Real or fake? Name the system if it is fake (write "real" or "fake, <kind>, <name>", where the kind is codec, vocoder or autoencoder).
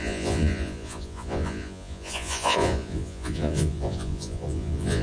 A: fake, vocoder, Vocos